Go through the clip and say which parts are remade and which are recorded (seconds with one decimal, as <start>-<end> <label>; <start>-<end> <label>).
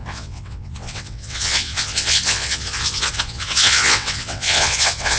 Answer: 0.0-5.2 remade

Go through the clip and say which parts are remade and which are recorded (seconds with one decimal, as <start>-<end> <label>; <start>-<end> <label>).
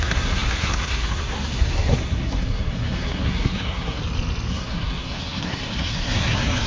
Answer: 0.0-4.0 remade; 4.0-4.5 recorded; 4.5-6.7 remade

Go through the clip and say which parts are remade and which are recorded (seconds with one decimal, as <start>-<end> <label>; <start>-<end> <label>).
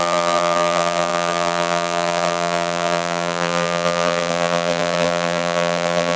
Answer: 0.0-6.2 remade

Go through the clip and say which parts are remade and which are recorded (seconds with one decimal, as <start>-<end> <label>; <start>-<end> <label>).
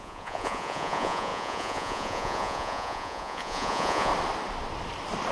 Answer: 0.0-4.1 remade; 4.1-5.3 recorded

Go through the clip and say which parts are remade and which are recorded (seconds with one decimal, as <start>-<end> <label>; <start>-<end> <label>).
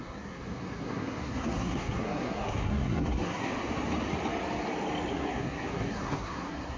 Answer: 0.0-3.5 remade; 3.5-5.1 recorded; 5.1-6.8 remade